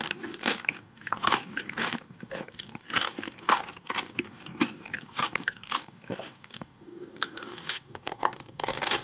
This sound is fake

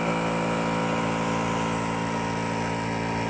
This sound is real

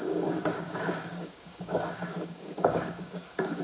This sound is fake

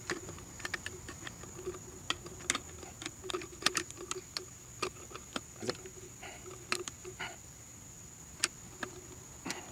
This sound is real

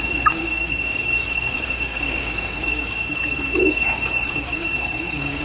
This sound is fake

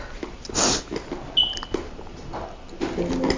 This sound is real